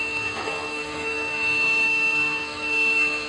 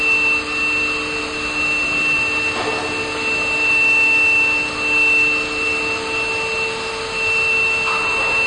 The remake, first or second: first